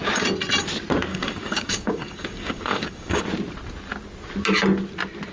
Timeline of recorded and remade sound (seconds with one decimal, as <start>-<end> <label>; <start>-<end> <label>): 0.0-1.1 recorded; 1.1-3.2 remade; 3.2-5.3 recorded